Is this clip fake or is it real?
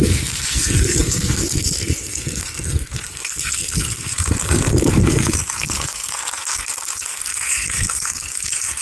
fake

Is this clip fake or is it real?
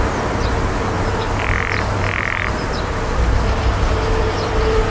real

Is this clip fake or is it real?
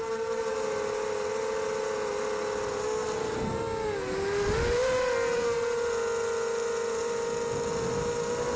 real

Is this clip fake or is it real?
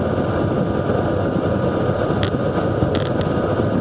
real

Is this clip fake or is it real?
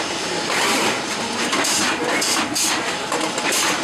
real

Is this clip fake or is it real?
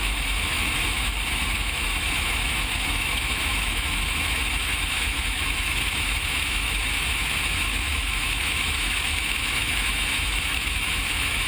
fake